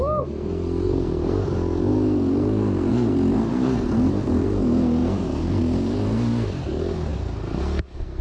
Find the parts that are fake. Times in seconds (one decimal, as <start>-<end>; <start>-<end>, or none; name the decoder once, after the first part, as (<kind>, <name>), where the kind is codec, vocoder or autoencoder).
0.0-8.2 (codec, SNAC)